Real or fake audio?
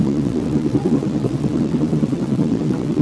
fake